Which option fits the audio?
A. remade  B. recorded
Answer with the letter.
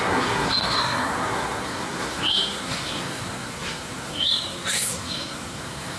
A